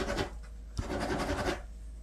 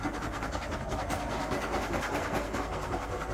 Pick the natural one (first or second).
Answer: first